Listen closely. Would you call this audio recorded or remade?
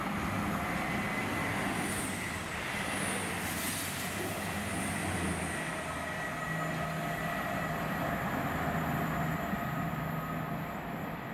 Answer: recorded